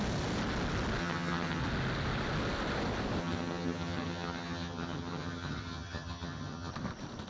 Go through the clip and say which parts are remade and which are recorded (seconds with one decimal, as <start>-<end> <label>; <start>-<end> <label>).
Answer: 0.0-1.0 recorded; 1.0-1.6 remade; 1.6-3.2 recorded; 3.2-6.7 remade; 6.7-7.3 recorded